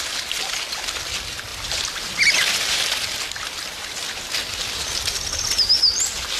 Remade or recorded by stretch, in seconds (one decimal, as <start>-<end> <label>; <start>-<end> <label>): 0.0-6.4 recorded